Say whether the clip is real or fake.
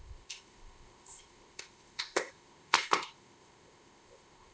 fake